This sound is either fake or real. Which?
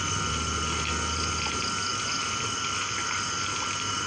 real